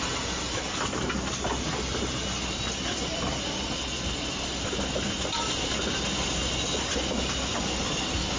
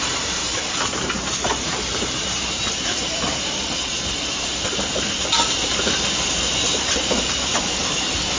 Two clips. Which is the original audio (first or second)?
first